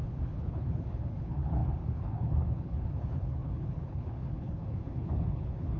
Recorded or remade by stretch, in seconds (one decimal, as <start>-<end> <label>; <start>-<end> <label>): 0.0-5.8 remade

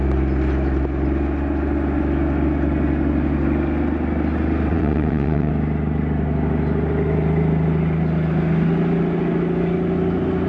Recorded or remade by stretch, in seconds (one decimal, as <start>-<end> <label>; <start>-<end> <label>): 0.0-4.7 recorded; 4.7-5.5 remade; 5.5-10.5 recorded

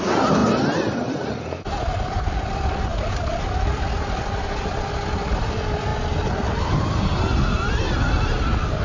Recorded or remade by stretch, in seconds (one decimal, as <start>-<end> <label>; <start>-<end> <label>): 0.0-8.8 recorded

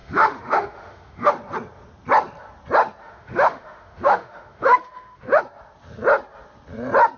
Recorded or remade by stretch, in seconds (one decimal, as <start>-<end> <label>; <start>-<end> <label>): 0.0-1.3 remade; 1.3-3.0 recorded; 3.0-5.4 remade; 5.4-7.2 recorded

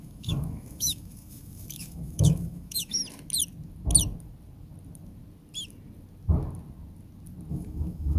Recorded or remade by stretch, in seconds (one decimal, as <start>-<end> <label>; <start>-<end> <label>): 0.0-3.0 remade; 3.0-7.5 recorded; 7.5-8.2 remade

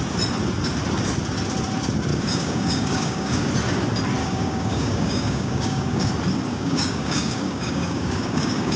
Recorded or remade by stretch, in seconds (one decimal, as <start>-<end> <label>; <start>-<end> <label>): 0.0-2.1 recorded; 2.1-3.5 remade; 3.5-4.2 recorded; 4.2-6.1 remade; 6.1-6.5 recorded; 6.5-8.8 remade

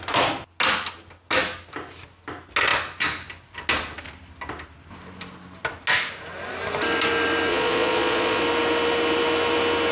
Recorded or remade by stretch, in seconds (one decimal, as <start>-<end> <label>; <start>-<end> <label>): 0.0-7.5 recorded; 7.5-8.4 remade; 8.4-9.9 recorded

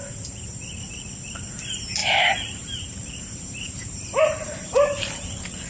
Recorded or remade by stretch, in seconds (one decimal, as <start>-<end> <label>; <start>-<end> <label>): 0.0-0.9 remade; 0.9-2.0 recorded; 2.0-5.7 remade